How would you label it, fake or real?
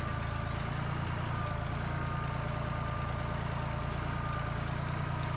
real